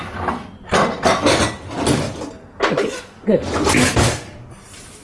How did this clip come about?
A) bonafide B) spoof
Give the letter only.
A